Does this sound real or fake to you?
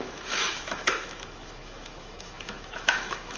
fake